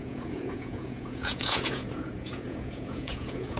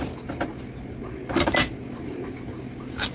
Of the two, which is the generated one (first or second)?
first